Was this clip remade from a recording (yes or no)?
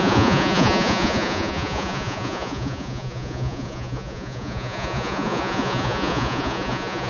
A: yes